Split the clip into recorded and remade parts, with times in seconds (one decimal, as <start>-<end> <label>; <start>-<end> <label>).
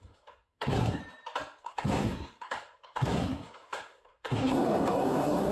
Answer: 0.0-1.0 remade; 1.0-1.6 recorded; 1.6-5.5 remade